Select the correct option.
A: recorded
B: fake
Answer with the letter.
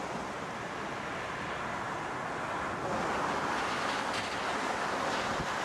A